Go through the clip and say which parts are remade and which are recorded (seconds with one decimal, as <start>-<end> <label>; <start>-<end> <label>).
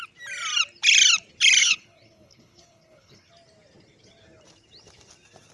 0.0-1.6 recorded; 1.6-3.3 remade; 3.3-5.5 recorded